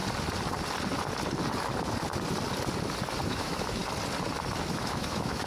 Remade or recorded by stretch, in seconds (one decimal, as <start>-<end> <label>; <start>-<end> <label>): 0.0-3.3 recorded; 3.3-3.8 remade; 3.8-4.7 recorded; 4.7-5.5 remade